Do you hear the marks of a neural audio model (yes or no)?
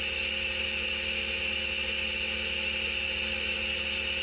no